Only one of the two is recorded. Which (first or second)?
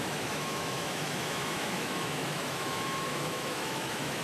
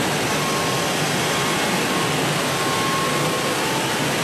second